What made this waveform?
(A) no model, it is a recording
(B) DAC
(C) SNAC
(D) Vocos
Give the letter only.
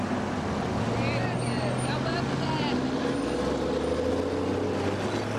A